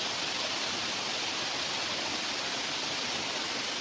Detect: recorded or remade recorded